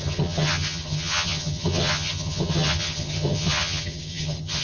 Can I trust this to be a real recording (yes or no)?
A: no